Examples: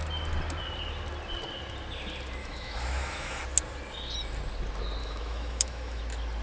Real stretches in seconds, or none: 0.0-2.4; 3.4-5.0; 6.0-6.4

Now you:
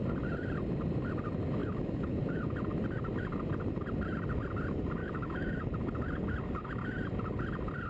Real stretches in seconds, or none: 0.0-1.6; 2.1-5.0; 5.5-7.9

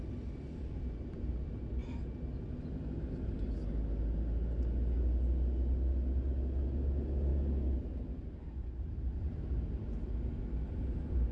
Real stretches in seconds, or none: 0.0-11.3

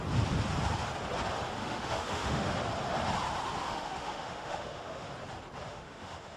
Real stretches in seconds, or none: 0.0-1.6; 2.5-3.6; 5.1-5.7

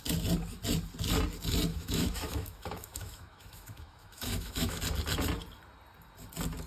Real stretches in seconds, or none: 0.0-1.7; 4.8-6.7